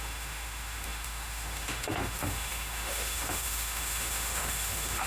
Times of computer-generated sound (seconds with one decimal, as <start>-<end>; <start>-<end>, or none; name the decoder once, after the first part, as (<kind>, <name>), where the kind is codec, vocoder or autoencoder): 0.0-5.1 (autoencoder, DAC-VAE)